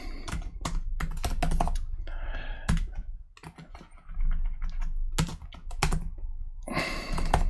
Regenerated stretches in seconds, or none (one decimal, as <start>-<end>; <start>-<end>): none